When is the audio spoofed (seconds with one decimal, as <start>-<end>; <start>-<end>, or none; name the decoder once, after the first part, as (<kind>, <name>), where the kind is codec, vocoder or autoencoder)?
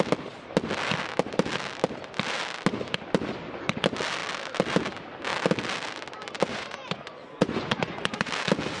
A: 6.5-8.3 (vocoder, Vocos)